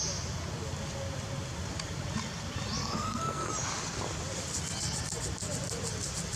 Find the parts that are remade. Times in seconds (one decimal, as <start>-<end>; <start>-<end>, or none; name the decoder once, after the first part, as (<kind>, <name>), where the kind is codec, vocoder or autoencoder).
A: 2.8-3.5 (codec, SNAC)